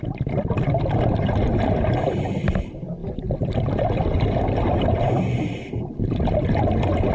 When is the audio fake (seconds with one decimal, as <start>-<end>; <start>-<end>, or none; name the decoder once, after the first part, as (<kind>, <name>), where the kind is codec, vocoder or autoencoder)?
none